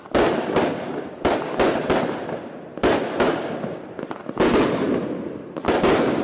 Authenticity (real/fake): real